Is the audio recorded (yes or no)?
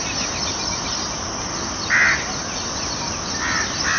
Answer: yes